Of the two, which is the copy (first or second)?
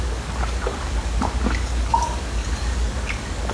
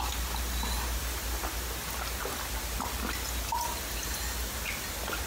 first